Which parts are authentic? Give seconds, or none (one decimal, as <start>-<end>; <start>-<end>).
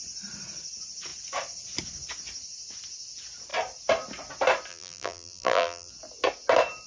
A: 0.0-4.7; 5.9-6.9